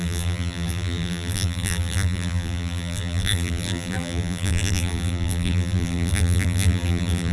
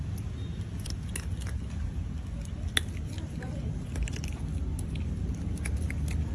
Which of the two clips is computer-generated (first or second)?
first